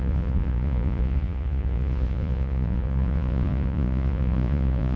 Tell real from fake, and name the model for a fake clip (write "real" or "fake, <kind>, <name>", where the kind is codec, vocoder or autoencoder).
fake, vocoder, Vocos